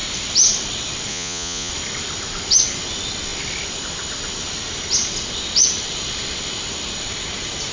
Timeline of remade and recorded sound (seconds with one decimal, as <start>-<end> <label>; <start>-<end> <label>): 0.0-1.1 recorded; 1.1-1.7 remade; 1.7-7.7 recorded